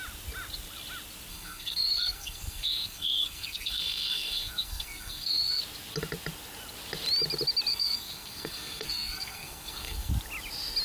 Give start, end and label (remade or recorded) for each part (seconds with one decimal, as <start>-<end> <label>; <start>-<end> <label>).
0.0-1.3 recorded; 1.3-5.6 remade; 5.6-7.7 recorded; 7.7-10.1 remade; 10.1-10.8 recorded